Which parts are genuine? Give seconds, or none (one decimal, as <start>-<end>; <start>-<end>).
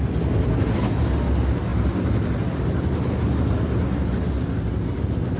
0.0-5.4